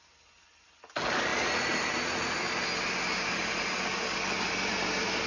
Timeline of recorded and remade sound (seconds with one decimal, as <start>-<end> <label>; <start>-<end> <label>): 0.0-5.3 recorded